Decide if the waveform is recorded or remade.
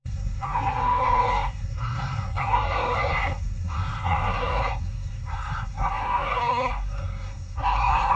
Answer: remade